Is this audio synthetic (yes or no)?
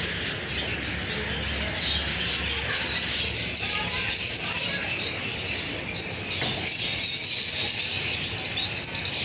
no